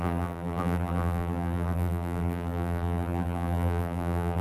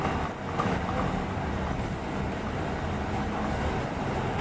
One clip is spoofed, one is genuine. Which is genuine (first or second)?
second